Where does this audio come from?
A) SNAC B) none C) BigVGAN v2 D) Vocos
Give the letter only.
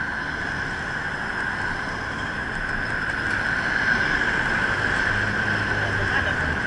B